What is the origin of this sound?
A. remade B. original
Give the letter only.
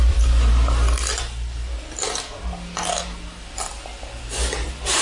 B